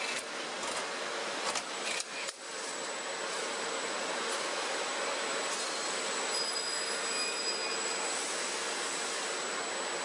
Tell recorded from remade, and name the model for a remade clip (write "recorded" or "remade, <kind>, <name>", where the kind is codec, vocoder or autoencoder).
recorded